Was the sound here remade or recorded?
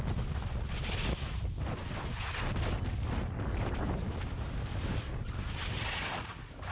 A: recorded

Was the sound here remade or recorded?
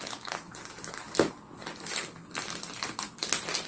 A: recorded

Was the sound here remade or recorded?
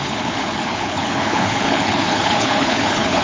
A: remade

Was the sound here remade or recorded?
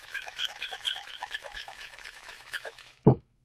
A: remade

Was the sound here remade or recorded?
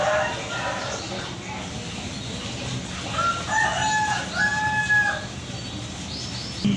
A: recorded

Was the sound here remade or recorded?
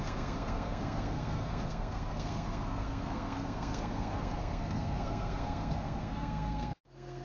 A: remade